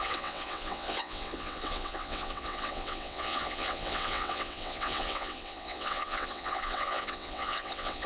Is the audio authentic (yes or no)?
no